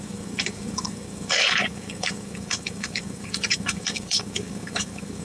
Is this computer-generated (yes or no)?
yes